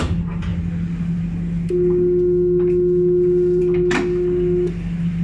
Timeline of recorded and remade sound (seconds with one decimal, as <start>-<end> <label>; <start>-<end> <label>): 0.0-5.2 recorded

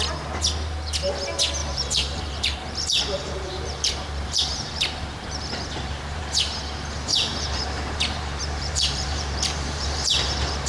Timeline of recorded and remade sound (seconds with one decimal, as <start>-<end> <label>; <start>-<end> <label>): 0.0-1.6 recorded; 1.6-6.2 remade; 6.2-7.1 recorded; 7.1-10.7 remade

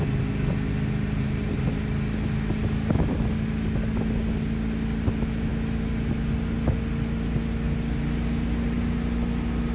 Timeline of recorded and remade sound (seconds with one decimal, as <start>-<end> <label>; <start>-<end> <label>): 0.0-9.7 recorded

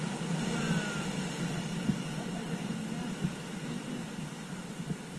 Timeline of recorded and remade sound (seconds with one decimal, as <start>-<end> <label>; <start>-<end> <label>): 0.0-3.0 recorded; 3.0-5.2 remade